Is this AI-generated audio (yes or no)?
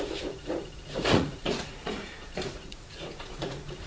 yes